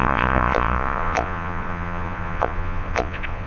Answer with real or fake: fake